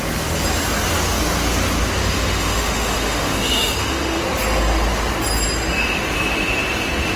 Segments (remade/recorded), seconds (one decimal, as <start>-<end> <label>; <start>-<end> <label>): 0.0-2.0 recorded; 2.0-4.2 remade; 4.2-7.2 recorded